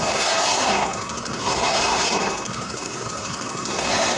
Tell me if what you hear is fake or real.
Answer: fake